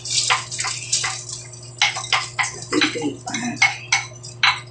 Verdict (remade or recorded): recorded